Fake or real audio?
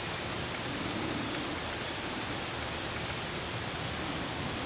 real